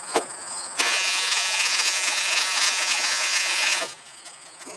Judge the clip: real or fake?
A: fake